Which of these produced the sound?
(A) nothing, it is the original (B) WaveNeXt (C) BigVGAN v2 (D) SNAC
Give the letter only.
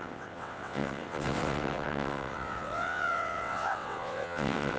B